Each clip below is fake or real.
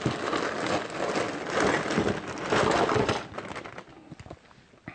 real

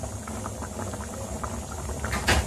real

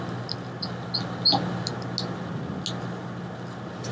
real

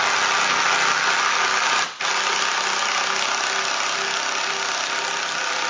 real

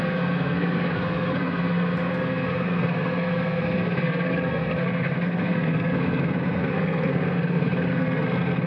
fake